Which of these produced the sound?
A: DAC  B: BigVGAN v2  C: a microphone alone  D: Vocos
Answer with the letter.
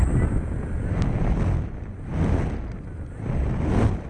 C